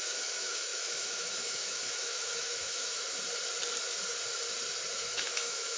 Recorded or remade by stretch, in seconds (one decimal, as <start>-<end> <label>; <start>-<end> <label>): 0.0-3.0 remade; 3.0-4.9 recorded; 4.9-5.8 remade